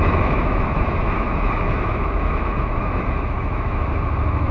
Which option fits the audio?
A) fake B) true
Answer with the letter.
A